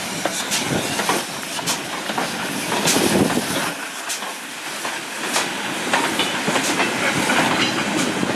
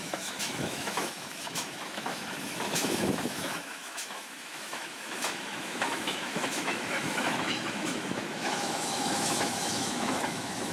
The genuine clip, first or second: first